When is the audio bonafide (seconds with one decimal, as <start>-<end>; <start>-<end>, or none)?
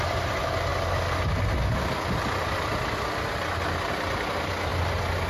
0.0-5.3